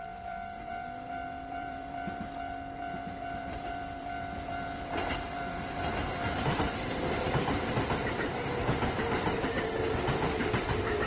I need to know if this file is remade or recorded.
remade